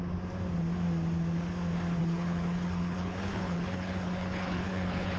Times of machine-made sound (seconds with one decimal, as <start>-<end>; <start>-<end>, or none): 2.0-5.2